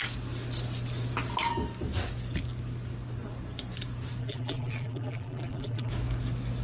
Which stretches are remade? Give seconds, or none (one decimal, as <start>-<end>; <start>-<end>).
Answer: 4.2-5.9